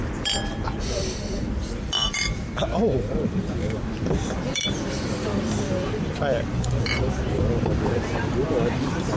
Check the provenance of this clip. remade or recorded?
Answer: remade